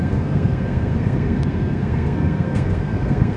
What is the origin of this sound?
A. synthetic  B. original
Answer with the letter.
A